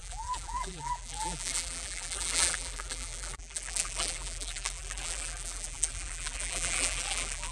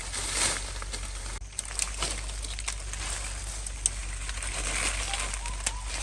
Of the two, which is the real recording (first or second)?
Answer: second